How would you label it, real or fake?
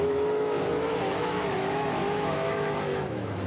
fake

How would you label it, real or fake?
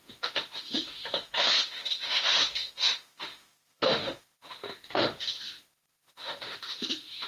fake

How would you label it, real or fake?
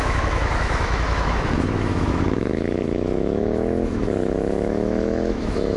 fake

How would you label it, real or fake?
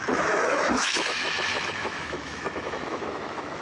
fake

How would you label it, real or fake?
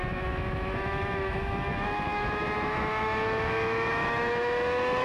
fake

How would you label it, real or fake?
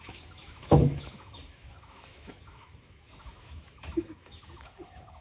fake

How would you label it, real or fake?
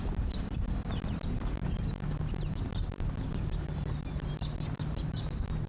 real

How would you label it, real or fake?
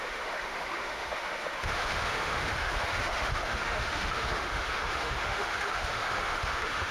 fake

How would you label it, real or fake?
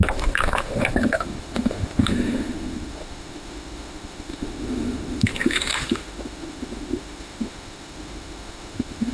fake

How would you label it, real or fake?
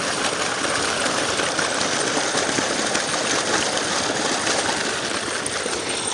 real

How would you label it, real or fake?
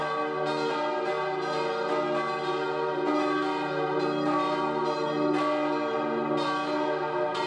real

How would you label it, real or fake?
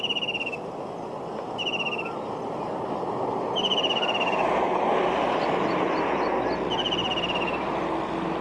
real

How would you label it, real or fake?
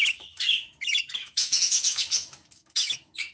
fake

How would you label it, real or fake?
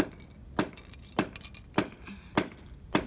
real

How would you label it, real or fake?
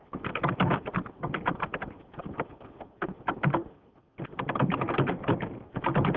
real